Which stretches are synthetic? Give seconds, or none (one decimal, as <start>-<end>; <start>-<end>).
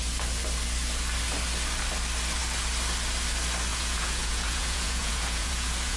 3.7-6.0